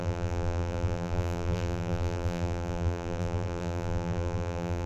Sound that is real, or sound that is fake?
fake